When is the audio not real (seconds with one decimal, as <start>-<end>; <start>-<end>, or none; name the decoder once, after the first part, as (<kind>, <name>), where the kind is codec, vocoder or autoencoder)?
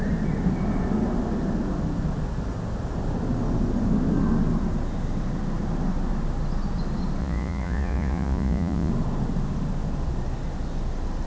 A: 7.2-8.9 (vocoder, Vocos)